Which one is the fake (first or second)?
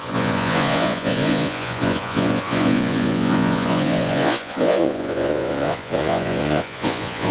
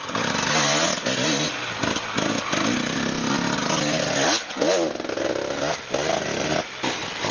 first